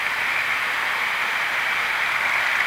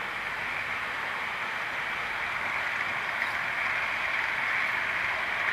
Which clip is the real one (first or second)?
second